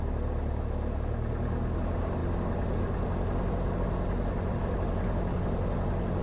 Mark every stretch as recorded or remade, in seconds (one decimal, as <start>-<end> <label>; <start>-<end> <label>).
0.0-6.2 recorded